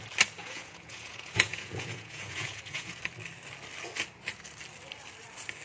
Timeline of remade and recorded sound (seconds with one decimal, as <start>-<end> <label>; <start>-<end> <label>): 0.0-0.4 recorded; 0.4-3.0 remade; 3.0-5.6 recorded

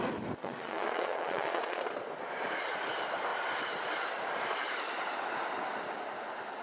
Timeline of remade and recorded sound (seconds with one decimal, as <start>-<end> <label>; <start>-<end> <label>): 0.0-0.4 recorded; 0.4-1.8 remade; 1.8-6.6 recorded

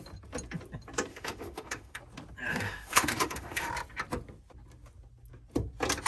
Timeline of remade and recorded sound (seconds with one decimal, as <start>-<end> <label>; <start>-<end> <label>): 0.0-1.1 recorded; 1.1-2.0 remade; 2.0-2.5 recorded; 2.5-3.7 remade; 3.7-6.1 recorded

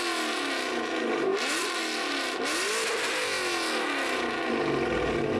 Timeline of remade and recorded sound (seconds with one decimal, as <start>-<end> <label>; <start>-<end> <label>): 0.0-5.4 recorded

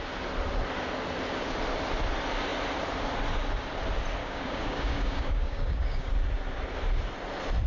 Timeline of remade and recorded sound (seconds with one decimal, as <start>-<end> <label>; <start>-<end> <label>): 0.0-4.2 recorded; 4.2-6.1 remade; 6.1-7.7 recorded